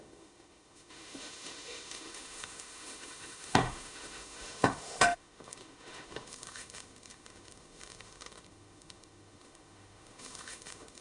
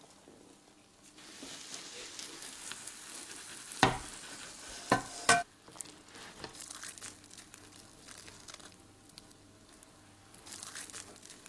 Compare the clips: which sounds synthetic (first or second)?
first